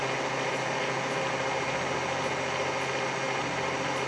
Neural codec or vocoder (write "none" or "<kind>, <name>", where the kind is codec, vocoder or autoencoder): none